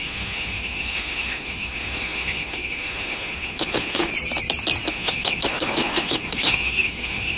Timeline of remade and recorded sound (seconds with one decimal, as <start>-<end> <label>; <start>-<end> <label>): 0.0-4.1 remade; 4.1-4.9 recorded; 4.9-7.4 remade

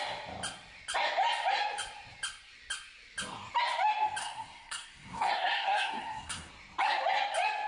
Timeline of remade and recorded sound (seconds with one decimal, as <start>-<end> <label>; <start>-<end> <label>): 0.0-4.2 recorded; 4.2-6.5 remade; 6.5-7.7 recorded